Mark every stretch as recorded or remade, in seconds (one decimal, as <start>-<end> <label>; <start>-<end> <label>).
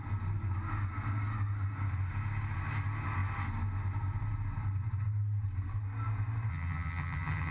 0.0-6.5 recorded; 6.5-7.5 remade